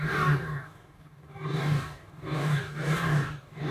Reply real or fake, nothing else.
fake